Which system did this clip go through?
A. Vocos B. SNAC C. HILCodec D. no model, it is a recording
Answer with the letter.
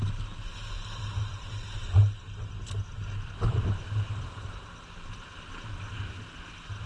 D